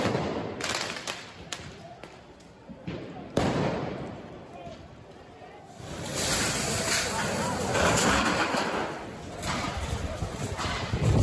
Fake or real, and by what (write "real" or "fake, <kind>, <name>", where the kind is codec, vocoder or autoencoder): fake, vocoder, BigVGAN v2